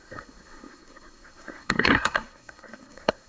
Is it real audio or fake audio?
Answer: fake